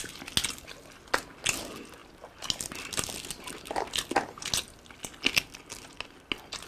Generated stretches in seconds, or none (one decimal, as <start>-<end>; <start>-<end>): none